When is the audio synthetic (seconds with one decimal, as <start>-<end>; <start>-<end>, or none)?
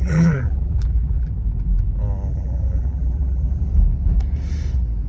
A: 0.0-1.3; 2.3-3.6